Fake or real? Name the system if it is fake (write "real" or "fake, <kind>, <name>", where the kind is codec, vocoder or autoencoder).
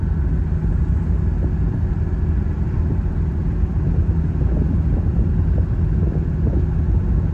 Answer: real